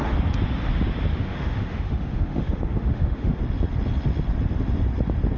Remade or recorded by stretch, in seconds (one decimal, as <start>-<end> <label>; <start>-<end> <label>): 0.0-1.1 recorded; 1.1-3.4 remade; 3.4-5.4 recorded